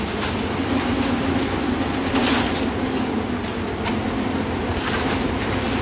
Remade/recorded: recorded